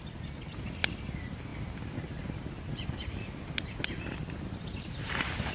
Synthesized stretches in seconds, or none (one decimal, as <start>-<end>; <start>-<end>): none